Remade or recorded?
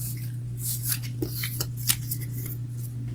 recorded